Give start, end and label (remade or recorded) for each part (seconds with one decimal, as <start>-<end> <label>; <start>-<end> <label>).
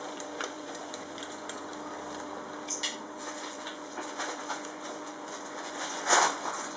0.0-1.7 remade; 1.7-3.0 recorded; 3.0-6.8 remade